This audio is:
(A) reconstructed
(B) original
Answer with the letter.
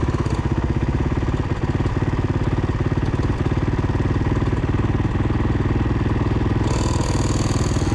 B